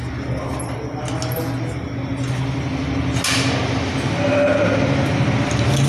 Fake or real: real